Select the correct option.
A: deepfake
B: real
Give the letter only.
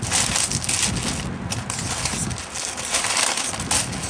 B